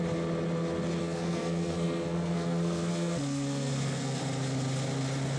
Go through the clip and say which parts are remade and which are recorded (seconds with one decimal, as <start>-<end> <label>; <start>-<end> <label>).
0.0-1.0 recorded; 1.0-4.2 remade; 4.2-5.4 recorded